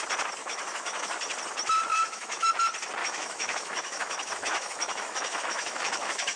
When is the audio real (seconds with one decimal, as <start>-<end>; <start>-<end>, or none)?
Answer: 0.0-0.4; 1.2-1.9; 2.5-3.0